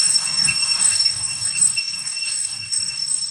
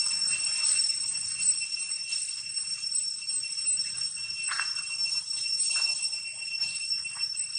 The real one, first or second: second